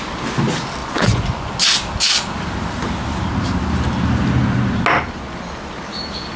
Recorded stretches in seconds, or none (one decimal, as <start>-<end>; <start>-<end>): 0.0-0.8; 1.5-6.4